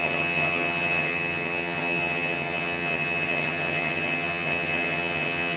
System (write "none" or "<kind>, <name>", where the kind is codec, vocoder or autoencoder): vocoder, HiFi-GAN